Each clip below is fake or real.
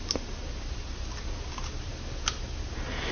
real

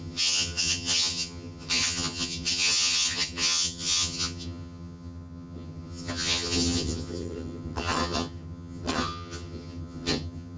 fake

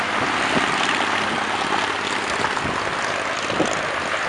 real